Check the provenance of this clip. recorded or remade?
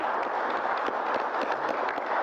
remade